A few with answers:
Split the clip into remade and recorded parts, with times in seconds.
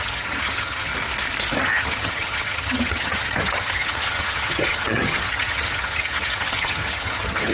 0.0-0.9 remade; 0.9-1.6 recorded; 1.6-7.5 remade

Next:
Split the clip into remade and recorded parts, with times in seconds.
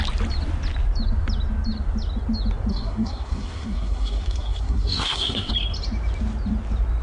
0.0-2.7 recorded; 2.7-5.5 remade; 5.5-7.0 recorded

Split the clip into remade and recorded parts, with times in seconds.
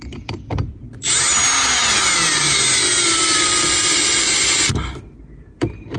0.0-6.0 recorded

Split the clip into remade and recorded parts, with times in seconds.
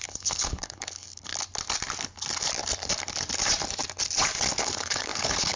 0.0-1.3 remade; 1.3-4.6 recorded; 4.6-5.6 remade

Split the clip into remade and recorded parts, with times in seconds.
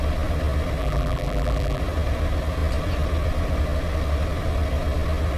0.0-0.8 recorded; 0.8-1.8 remade; 1.8-5.4 recorded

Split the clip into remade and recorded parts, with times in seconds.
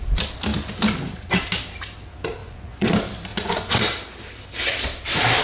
0.0-2.4 recorded; 2.4-2.9 remade; 2.9-3.3 recorded; 3.3-3.8 remade; 3.8-5.4 recorded